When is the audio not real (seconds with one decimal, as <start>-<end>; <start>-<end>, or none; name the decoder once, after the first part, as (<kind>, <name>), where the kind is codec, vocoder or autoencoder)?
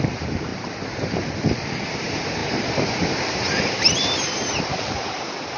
0.0-0.5 (vocoder, BigVGAN v2); 1.9-5.6